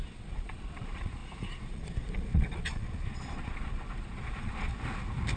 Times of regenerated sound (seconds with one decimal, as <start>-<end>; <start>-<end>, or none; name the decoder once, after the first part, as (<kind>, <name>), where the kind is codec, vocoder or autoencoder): 0.0-4.7 (vocoder, Vocos)

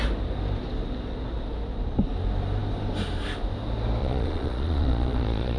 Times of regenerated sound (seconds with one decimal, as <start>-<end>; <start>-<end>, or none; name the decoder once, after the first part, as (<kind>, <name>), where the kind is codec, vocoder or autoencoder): 4.0-5.6 (vocoder, Vocos)

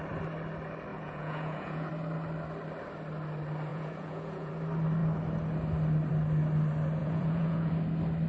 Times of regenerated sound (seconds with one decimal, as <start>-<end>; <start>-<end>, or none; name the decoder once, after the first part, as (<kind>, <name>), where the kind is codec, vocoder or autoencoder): 0.9-1.9 (vocoder, Vocos); 3.7-4.5; 7.0-7.7

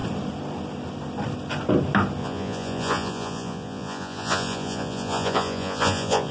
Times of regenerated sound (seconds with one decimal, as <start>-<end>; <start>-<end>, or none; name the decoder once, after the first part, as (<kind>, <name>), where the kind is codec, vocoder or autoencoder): 2.2-6.3 (vocoder, Vocos)

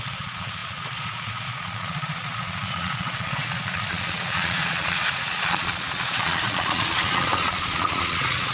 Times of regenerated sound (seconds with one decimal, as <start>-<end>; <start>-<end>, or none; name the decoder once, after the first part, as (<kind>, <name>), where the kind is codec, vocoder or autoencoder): 0.0-8.5 (vocoder, Vocos)

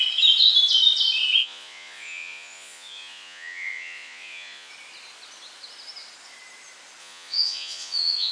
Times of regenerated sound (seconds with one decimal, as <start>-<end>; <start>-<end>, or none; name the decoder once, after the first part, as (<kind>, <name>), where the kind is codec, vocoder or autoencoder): 1.4-4.7 (vocoder, Vocos); 7.0-8.3

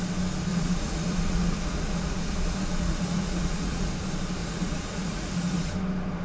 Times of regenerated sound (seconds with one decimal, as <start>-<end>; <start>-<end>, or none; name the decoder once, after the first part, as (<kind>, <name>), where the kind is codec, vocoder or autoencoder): 0.5-3.9 (vocoder, Vocos); 4.4-5.7

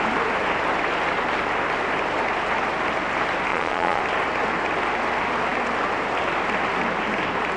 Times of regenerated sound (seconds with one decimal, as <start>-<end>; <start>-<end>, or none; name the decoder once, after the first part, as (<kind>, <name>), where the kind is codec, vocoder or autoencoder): 3.5-4.0 (vocoder, Vocos)